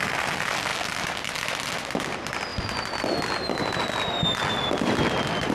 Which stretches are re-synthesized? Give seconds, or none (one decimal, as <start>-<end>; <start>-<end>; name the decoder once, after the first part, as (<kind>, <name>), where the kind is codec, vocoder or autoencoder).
none